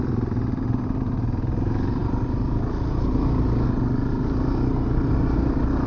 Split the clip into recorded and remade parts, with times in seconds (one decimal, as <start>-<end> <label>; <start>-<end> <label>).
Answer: 0.0-5.9 recorded